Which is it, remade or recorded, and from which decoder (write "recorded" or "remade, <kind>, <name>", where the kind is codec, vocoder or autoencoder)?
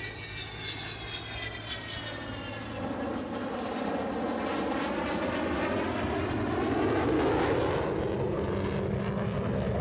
recorded